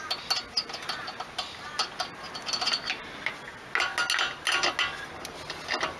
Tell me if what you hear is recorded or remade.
recorded